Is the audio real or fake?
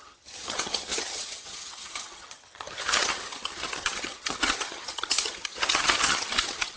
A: fake